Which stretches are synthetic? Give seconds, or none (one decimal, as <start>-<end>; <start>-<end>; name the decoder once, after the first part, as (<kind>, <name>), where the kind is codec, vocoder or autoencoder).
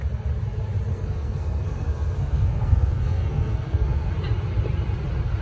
0.9-4.1 (codec, SNAC)